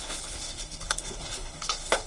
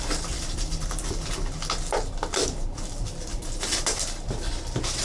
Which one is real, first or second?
second